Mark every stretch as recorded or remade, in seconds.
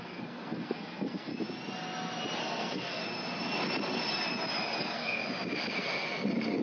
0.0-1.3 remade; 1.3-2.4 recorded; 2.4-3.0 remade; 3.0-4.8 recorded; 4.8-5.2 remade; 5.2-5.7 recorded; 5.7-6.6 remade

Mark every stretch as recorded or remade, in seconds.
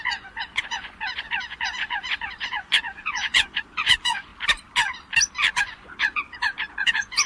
0.0-4.3 remade; 4.3-5.6 recorded; 5.6-7.3 remade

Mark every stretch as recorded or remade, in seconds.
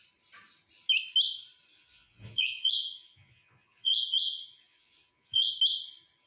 0.0-1.7 recorded; 1.7-5.5 remade; 5.5-6.3 recorded